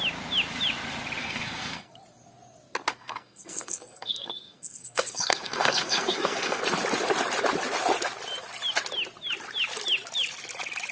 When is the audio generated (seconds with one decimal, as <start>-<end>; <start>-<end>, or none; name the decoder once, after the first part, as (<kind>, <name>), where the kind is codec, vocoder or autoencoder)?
1.2-1.9 (codec, SNAC); 2.9-6.6